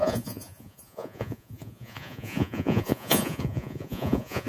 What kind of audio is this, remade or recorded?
remade